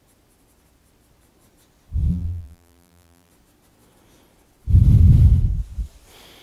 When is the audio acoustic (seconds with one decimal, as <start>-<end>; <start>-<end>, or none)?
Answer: 0.0-2.1; 3.3-6.4